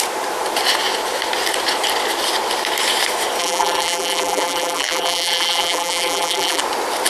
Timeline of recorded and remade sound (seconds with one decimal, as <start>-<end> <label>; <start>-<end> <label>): 0.0-3.4 recorded; 3.4-6.6 remade; 6.6-7.1 recorded